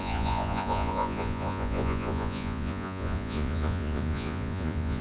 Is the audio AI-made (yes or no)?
yes